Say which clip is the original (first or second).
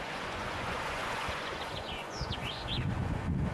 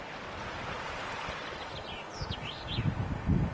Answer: second